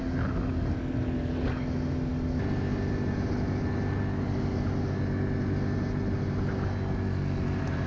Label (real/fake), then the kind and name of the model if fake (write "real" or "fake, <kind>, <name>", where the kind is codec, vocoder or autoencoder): real